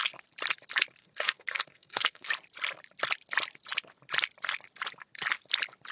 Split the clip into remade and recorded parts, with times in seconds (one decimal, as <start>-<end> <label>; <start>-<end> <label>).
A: 0.0-1.0 recorded; 1.0-2.3 remade; 2.3-5.9 recorded